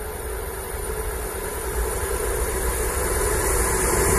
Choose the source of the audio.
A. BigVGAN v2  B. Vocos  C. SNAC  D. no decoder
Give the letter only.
D